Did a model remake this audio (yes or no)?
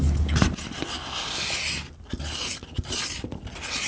no